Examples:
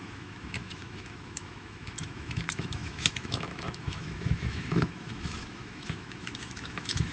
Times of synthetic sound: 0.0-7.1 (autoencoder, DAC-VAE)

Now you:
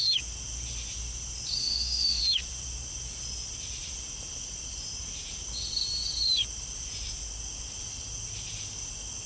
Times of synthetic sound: 1.6-2.2 (autoencoder, DAC-VAE)

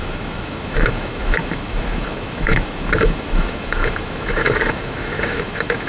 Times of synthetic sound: 0.0-5.9 (autoencoder, DAC-VAE)

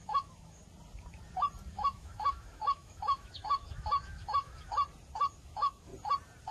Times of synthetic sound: 0.0-0.6 (autoencoder, DAC-VAE); 1.7-4.7; 5.4-5.9

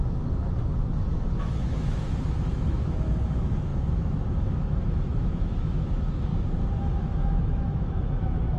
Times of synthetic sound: 0.0-6.3 (autoencoder, DAC-VAE); 6.9-8.6

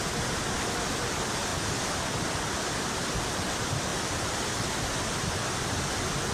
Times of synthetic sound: none